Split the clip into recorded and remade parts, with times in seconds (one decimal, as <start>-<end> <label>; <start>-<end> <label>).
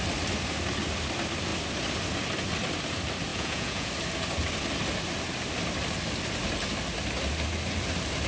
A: 0.0-3.3 recorded; 3.3-3.9 remade; 3.9-8.3 recorded